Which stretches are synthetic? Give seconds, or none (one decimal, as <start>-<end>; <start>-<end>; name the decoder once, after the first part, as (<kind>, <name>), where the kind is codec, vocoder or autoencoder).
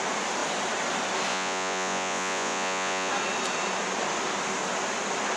1.3-3.1 (vocoder, Vocos)